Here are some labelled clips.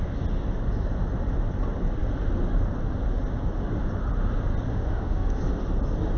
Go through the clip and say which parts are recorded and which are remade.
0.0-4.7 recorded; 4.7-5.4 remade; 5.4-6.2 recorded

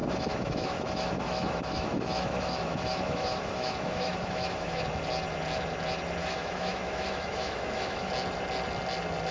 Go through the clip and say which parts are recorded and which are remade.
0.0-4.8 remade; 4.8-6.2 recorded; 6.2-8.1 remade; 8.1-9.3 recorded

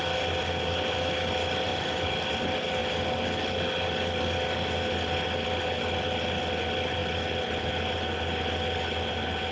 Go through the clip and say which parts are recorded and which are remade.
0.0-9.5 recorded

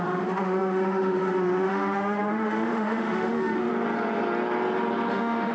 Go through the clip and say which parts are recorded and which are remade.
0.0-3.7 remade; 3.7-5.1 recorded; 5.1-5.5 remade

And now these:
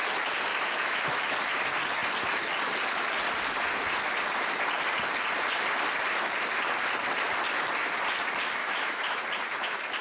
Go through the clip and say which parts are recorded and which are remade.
0.0-0.5 recorded; 0.5-1.3 remade; 1.3-8.6 recorded; 8.6-9.2 remade; 9.2-10.0 recorded

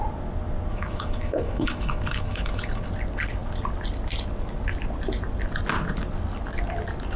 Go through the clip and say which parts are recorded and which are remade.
0.0-0.7 recorded; 0.7-2.9 remade; 2.9-7.2 recorded

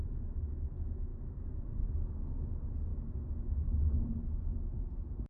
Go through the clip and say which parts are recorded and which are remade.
0.0-5.3 recorded